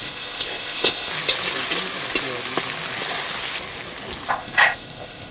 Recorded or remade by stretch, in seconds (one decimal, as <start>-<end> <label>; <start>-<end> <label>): 0.0-1.1 remade; 1.1-4.3 recorded; 4.3-5.3 remade